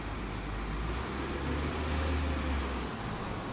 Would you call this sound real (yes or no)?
yes